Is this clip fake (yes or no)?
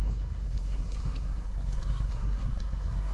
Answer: yes